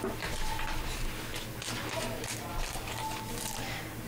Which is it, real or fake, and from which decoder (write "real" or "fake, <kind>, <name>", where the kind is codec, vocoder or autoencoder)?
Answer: real